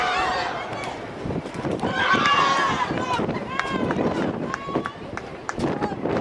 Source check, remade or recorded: remade